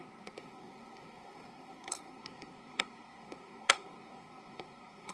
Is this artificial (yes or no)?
yes